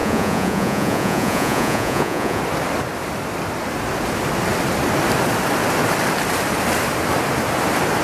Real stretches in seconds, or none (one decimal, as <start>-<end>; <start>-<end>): 2.4-8.0